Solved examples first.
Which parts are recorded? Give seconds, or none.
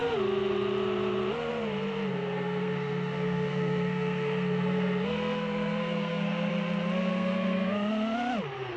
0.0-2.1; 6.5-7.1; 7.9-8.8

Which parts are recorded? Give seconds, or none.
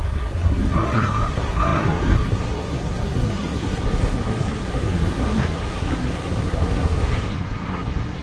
none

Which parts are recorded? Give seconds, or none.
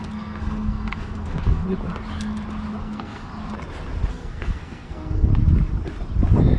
1.6-2.8; 3.3-4.1; 5.3-6.6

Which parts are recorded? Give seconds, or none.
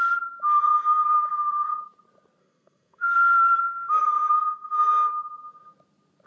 0.0-2.4; 4.9-6.3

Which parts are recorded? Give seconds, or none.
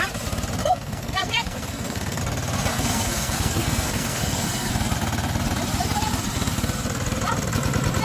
0.0-0.6; 2.2-2.7; 4.7-8.0